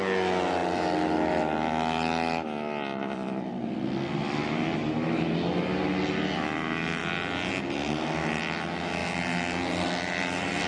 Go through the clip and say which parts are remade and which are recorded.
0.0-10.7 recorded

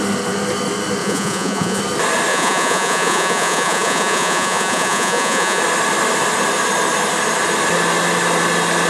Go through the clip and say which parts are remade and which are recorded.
0.0-1.0 recorded; 1.0-1.8 remade; 1.8-2.3 recorded; 2.3-5.6 remade; 5.6-8.9 recorded

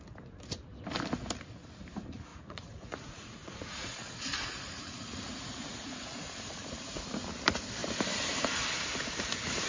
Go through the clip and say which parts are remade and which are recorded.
0.0-2.3 recorded; 2.3-7.0 remade; 7.0-9.7 recorded

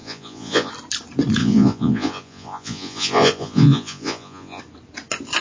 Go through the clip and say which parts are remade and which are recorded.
0.0-0.7 remade; 0.7-1.4 recorded; 1.4-4.6 remade; 4.6-5.4 recorded

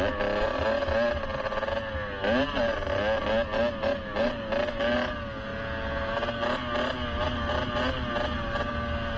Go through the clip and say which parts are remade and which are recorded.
0.0-9.2 recorded

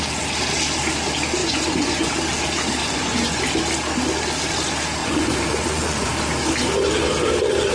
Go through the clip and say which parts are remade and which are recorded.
0.0-1.4 recorded; 1.4-2.1 remade; 2.1-2.8 recorded; 2.8-3.4 remade; 3.4-5.0 recorded; 5.0-6.1 remade; 6.1-7.7 recorded

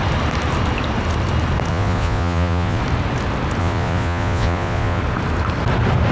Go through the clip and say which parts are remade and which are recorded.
0.0-1.7 recorded; 1.7-2.8 remade; 2.8-3.6 recorded; 3.6-5.0 remade; 5.0-6.1 recorded

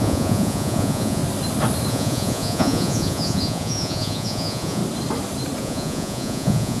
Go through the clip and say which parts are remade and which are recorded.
0.0-1.2 remade; 1.2-1.9 recorded; 1.9-4.8 remade; 4.8-5.6 recorded; 5.6-6.8 remade